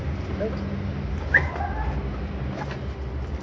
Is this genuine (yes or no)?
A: yes